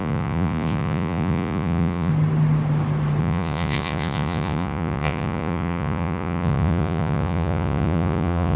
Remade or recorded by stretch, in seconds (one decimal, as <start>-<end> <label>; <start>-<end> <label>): 0.0-2.1 remade; 2.1-3.2 recorded; 3.2-8.6 remade